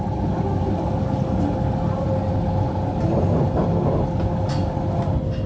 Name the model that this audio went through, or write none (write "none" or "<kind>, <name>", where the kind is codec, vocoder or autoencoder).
none